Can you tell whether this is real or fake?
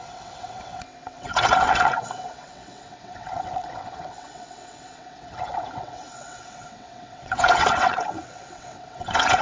fake